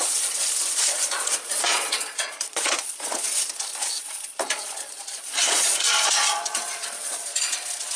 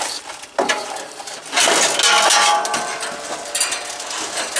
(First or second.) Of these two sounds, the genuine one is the second